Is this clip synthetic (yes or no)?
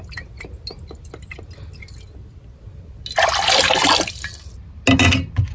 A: no